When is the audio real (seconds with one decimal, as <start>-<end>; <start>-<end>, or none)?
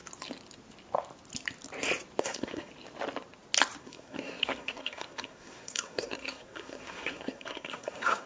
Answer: 0.0-2.2; 2.7-3.8